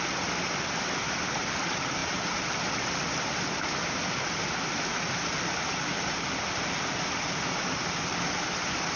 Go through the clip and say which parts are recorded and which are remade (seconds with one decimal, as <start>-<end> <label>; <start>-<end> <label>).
0.0-9.0 recorded